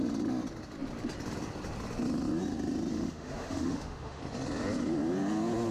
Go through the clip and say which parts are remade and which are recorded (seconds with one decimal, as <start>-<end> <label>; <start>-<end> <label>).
0.0-2.9 recorded; 2.9-4.2 remade; 4.2-5.7 recorded